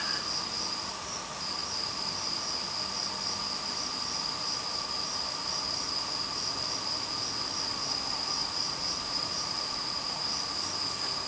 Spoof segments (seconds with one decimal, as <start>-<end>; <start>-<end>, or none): 8.4-10.2